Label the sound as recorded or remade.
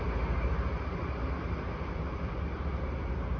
recorded